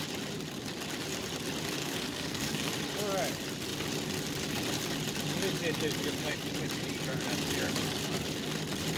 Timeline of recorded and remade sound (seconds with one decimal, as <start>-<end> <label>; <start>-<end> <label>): 0.0-1.8 recorded; 1.8-2.7 remade; 2.7-9.0 recorded